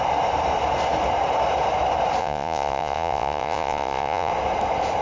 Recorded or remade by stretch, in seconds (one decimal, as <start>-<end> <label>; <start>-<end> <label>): 0.0-2.2 recorded; 2.2-4.3 remade; 4.3-5.0 recorded